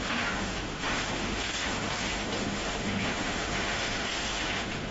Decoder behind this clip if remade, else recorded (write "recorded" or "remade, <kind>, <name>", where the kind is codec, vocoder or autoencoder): remade, autoencoder, DAC-VAE